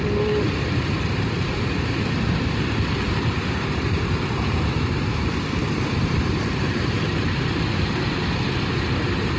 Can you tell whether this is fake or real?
fake